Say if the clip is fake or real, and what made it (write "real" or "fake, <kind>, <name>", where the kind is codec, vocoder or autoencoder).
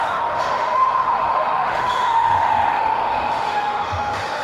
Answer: fake, autoencoder, DAC-VAE